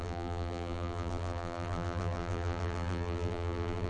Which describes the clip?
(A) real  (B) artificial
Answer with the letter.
B